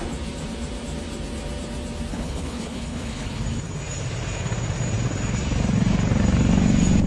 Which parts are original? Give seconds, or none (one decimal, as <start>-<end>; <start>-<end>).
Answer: 0.0-2.1; 3.4-7.1